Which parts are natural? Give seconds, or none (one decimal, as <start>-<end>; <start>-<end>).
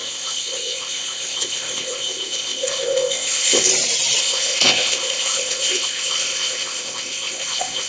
3.7-4.2